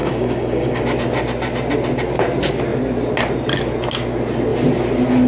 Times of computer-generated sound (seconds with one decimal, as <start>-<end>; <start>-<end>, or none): 0.0-0.8